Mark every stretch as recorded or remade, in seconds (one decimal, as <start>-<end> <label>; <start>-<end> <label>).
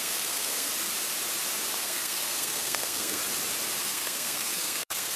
0.0-0.7 remade; 0.7-1.8 recorded; 1.8-3.2 remade; 3.2-3.8 recorded; 3.8-5.2 remade